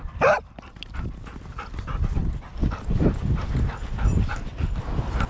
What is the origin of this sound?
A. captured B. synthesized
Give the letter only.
A